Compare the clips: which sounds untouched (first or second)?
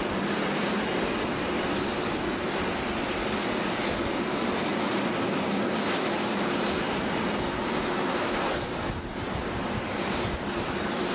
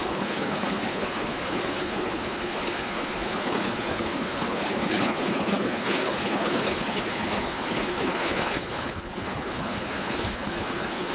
first